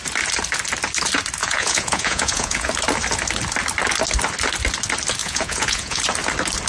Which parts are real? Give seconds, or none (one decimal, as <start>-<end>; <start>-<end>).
0.0-1.4; 2.7-5.2; 6.0-6.7